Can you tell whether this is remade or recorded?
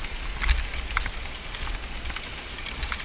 recorded